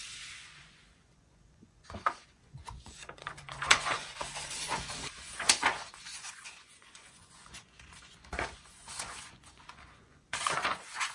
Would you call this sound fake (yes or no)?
yes